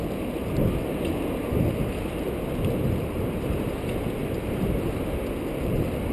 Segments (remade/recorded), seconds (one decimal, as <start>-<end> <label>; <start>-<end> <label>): 0.0-6.1 recorded